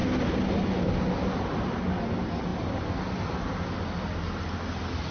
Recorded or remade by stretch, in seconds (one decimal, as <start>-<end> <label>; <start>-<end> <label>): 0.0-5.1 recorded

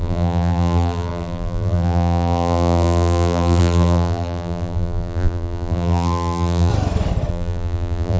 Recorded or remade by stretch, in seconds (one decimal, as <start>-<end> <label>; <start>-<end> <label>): 0.0-6.7 remade; 6.7-7.3 recorded; 7.3-8.2 remade

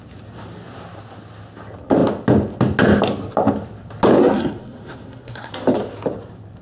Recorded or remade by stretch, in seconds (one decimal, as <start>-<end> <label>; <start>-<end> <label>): 0.0-4.2 recorded; 4.2-5.5 remade; 5.5-6.6 recorded

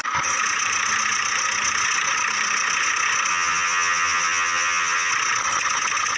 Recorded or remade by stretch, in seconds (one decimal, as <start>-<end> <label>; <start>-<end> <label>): 0.0-3.3 recorded; 3.3-5.1 remade; 5.1-6.2 recorded

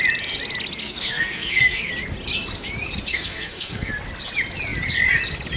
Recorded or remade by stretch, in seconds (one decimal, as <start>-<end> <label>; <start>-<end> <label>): 0.0-0.8 recorded; 0.8-1.9 remade; 1.9-3.1 recorded; 3.1-3.9 remade; 3.9-5.6 recorded

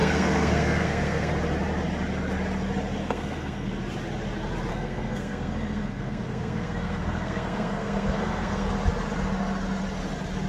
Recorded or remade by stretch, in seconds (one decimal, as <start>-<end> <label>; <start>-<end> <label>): 0.0-1.3 remade; 1.3-3.0 recorded; 3.0-3.7 remade; 3.7-4.7 recorded; 4.7-8.7 remade; 8.7-10.5 recorded

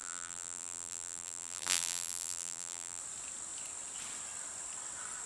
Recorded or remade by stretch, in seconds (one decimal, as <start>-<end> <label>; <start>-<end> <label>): 0.0-3.0 remade; 3.0-5.3 recorded